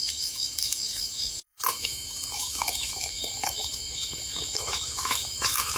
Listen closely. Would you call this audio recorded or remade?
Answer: remade